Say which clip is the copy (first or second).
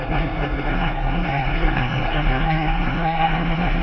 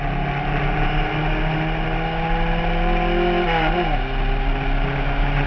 first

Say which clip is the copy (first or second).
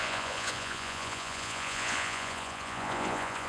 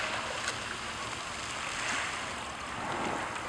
first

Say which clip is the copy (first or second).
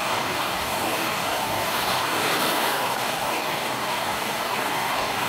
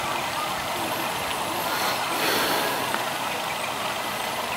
first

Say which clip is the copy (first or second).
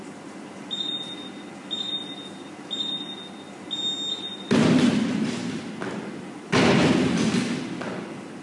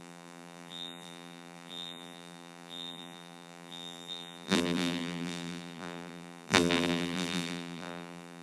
second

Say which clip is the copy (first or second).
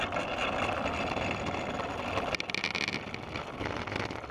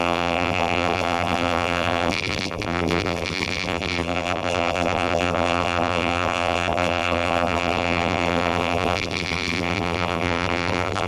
second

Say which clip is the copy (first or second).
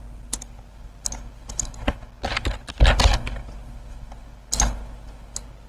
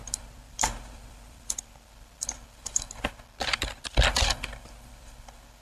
second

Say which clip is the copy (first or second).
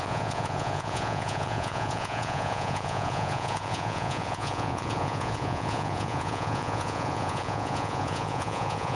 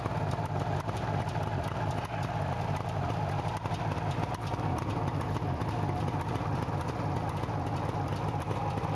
first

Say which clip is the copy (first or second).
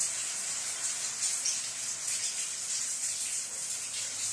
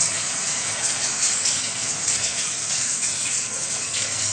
second